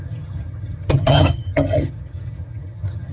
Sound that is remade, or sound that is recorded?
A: remade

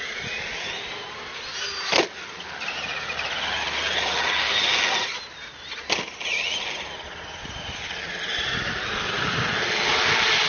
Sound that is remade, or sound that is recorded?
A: recorded